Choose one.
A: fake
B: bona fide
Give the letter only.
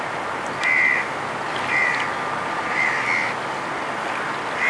B